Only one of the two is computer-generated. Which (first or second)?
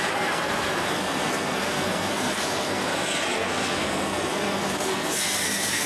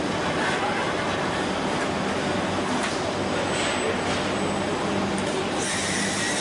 first